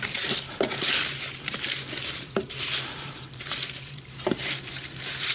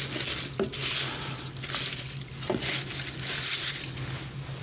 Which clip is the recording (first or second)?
second